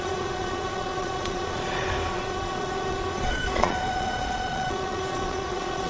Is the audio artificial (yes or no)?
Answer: yes